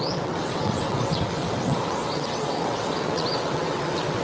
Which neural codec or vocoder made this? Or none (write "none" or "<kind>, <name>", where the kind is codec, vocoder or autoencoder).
vocoder, WaveNeXt